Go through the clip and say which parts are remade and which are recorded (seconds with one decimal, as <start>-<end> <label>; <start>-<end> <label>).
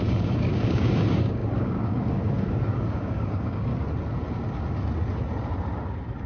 0.0-3.7 remade; 3.7-6.3 recorded